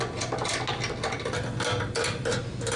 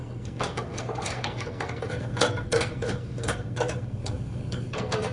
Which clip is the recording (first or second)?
first